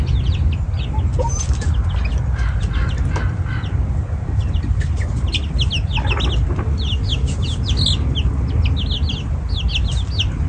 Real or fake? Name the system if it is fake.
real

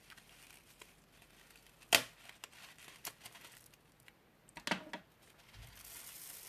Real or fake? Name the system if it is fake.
real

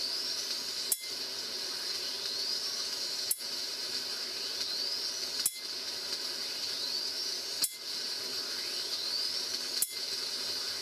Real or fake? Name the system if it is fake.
real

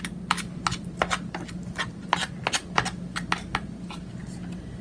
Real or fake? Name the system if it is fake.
real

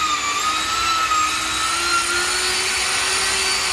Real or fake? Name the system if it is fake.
real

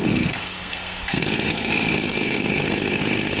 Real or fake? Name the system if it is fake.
fake, codec, SNAC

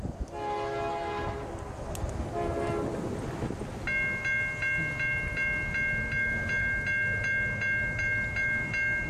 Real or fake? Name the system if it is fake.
real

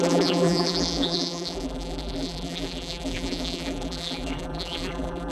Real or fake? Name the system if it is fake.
fake, vocoder, BigVGAN v2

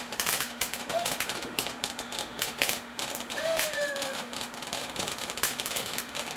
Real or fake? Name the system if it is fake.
fake, autoencoder, DAC-VAE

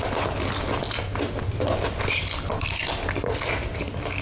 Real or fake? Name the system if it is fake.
real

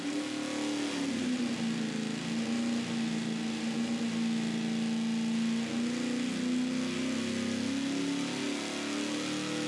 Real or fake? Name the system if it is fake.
real